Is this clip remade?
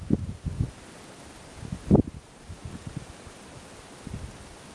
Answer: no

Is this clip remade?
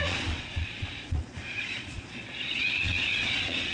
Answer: yes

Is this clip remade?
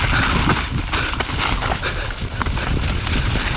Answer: no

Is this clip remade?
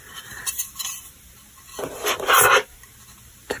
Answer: no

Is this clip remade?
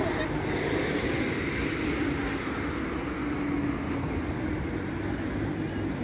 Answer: no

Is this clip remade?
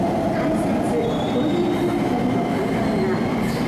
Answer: no